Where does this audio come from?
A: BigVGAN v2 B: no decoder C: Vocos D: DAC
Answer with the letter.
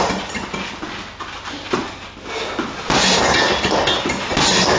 B